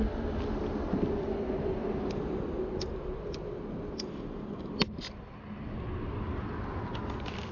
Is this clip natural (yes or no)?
yes